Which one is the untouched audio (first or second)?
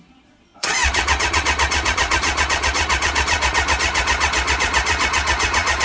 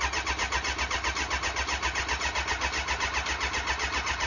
second